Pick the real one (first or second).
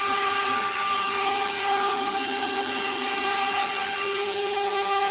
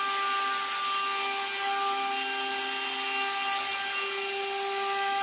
second